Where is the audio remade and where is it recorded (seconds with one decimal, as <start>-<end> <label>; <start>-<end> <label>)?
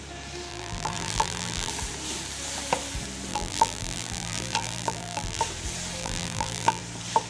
0.0-0.5 recorded; 0.5-1.7 remade; 1.7-3.3 recorded; 3.3-5.4 remade; 5.4-6.0 recorded; 6.0-6.8 remade; 6.8-7.3 recorded